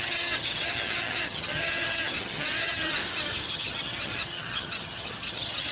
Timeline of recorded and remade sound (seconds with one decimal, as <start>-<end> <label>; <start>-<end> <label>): 0.0-3.0 remade; 3.0-3.5 recorded; 3.5-5.7 remade